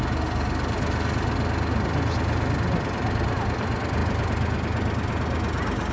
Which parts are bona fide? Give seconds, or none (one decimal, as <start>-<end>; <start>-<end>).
0.0-5.9